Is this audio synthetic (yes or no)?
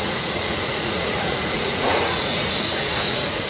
yes